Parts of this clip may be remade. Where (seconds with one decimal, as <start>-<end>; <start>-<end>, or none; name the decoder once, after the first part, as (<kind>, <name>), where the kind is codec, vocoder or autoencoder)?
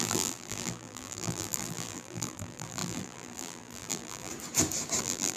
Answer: 0.0-4.3 (vocoder, BigVGAN v2); 5.0-5.4